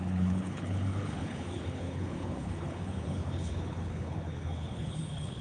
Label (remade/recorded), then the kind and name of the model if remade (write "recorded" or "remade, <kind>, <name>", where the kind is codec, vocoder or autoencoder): remade, codec, HILCodec